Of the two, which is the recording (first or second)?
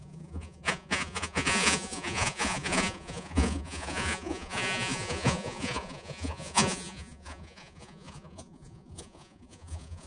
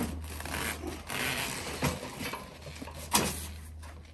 second